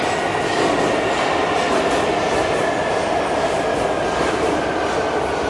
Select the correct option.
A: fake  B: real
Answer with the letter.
B